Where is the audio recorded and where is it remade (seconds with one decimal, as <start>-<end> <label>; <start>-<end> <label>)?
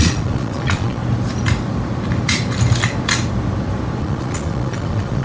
0.0-1.0 remade; 1.0-4.0 recorded; 4.0-5.2 remade